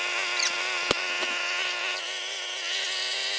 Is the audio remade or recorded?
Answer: recorded